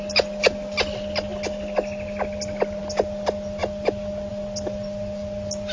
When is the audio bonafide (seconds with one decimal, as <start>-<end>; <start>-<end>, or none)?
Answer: 0.0-5.7